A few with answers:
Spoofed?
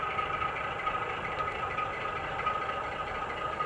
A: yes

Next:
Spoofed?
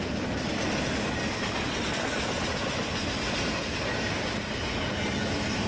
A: no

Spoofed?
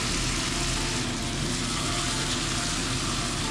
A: no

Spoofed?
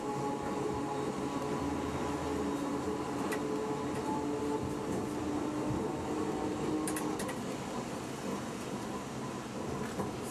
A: no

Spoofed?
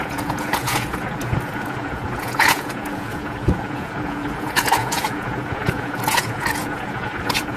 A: yes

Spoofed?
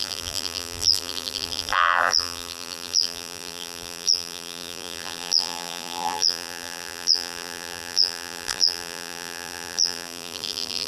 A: yes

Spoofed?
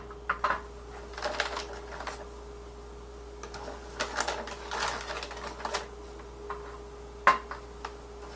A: no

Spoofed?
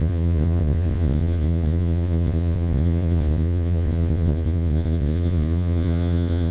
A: yes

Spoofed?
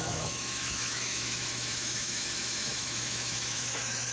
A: yes